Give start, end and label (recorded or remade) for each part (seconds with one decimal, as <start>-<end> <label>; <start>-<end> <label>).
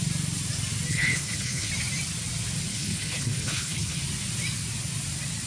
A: 0.0-0.9 recorded; 0.9-1.7 remade; 1.7-2.7 recorded; 2.7-4.0 remade; 4.0-5.5 recorded